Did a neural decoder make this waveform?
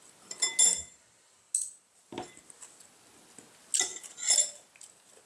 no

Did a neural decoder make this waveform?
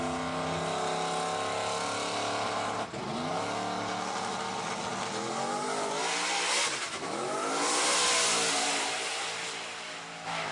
no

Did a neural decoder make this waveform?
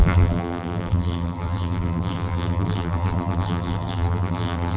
yes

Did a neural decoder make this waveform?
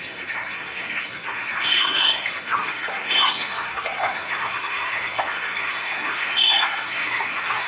yes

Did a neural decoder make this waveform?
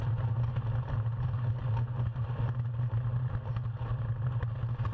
no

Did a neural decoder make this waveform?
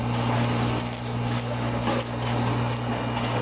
no